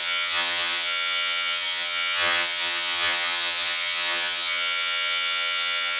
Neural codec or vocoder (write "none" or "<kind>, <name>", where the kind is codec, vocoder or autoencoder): vocoder, HiFi-GAN